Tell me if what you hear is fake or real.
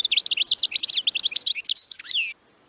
real